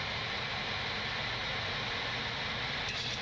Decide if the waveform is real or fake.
real